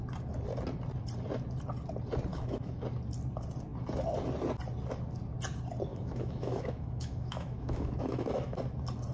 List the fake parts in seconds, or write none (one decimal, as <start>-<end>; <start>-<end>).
2.3-2.8; 5.9-8.6

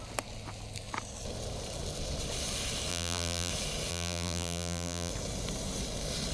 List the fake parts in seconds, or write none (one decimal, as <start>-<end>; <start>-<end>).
2.9-3.5; 3.9-5.1

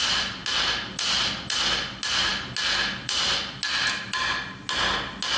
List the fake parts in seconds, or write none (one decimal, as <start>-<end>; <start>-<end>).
none

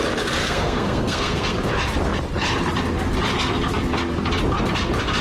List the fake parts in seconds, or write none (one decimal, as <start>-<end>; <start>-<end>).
0.4-1.7

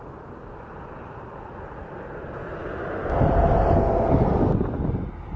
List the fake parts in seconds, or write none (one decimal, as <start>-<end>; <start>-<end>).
none

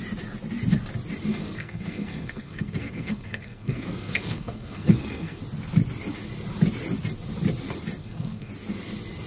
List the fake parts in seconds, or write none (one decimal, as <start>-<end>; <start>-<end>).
1.3-5.4; 8.0-8.5

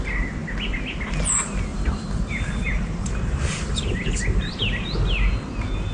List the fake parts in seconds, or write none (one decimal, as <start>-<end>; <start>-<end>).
1.7-4.6

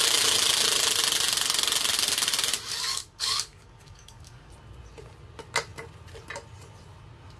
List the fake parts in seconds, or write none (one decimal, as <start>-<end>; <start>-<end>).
2.9-4.5